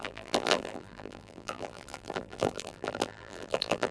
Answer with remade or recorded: remade